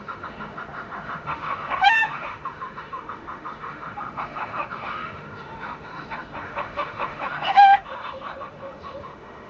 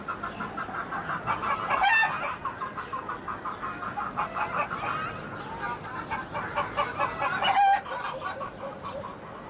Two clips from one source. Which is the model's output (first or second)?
first